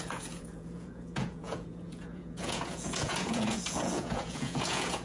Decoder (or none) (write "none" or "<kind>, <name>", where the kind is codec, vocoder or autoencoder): vocoder, Vocos